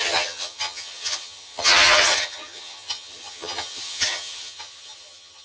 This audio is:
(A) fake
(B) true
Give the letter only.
A